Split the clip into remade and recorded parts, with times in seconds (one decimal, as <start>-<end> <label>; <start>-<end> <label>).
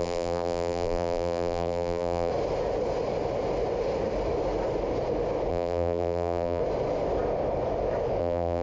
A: 0.0-2.3 remade; 2.3-5.5 recorded; 5.5-6.6 remade; 6.6-8.2 recorded; 8.2-8.6 remade